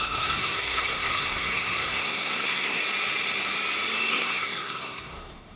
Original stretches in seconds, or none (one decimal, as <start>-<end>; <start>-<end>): 2.8-4.1